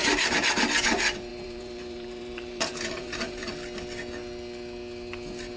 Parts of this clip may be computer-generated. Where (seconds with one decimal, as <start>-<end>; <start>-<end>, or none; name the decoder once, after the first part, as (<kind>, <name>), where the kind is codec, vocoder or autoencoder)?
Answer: 0.0-0.6 (vocoder, BigVGAN v2); 1.3-3.5